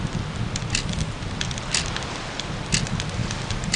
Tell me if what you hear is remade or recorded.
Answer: recorded